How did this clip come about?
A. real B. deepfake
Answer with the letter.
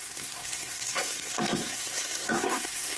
B